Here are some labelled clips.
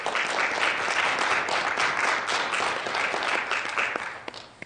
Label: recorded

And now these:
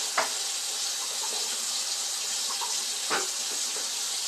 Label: recorded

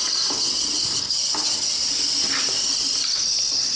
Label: recorded